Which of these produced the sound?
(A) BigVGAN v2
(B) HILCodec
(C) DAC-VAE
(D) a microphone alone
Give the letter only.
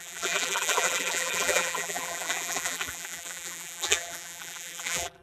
A